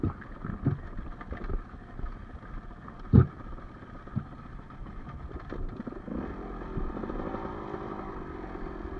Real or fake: real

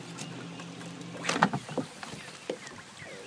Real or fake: real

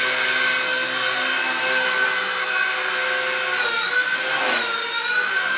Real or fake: real